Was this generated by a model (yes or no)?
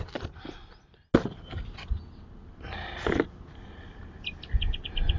no